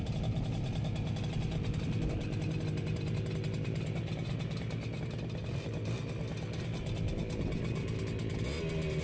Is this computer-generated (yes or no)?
no